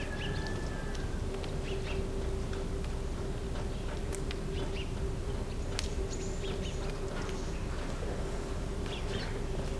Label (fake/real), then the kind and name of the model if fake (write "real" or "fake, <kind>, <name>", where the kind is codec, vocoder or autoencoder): real